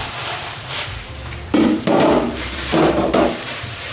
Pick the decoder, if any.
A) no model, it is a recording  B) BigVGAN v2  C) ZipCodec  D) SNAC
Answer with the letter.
B